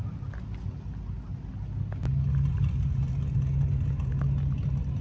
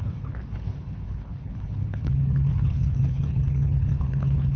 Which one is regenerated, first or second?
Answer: second